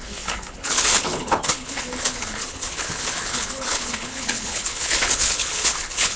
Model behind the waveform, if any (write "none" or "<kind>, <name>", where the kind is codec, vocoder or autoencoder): codec, HILCodec